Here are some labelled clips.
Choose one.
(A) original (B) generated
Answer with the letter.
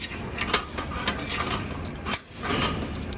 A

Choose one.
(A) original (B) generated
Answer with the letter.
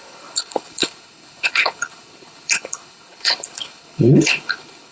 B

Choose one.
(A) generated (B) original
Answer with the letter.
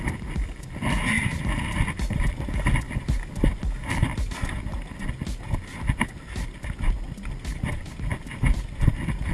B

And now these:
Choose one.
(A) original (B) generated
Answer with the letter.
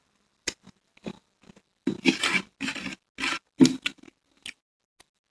A